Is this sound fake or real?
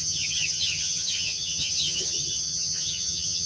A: fake